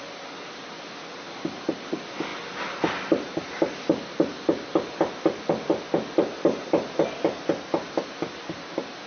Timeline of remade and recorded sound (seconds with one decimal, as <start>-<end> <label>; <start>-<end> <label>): 0.0-9.1 recorded